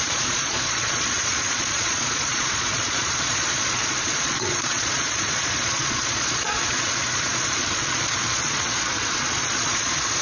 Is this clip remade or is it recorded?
remade